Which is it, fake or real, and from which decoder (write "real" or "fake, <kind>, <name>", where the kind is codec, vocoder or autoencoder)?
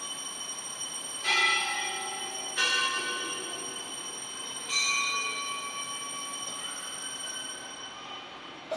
real